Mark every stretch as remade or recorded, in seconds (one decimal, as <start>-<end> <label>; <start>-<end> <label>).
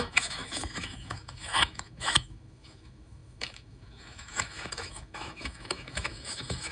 0.0-6.7 remade